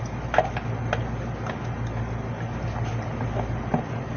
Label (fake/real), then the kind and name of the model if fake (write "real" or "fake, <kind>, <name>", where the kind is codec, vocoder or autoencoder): real